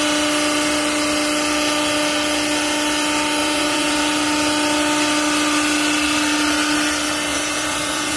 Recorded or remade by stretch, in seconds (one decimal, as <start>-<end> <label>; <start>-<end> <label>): 0.0-3.4 recorded; 3.4-4.0 remade; 4.0-7.3 recorded; 7.3-8.2 remade